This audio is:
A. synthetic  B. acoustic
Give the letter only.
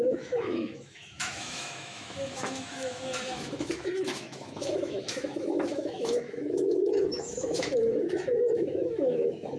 A